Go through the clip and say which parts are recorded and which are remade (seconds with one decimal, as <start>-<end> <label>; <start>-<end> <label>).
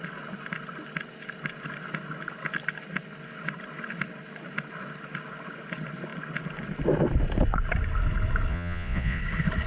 0.0-8.5 recorded; 8.5-9.2 remade; 9.2-9.7 recorded